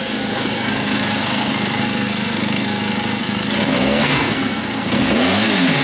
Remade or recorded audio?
remade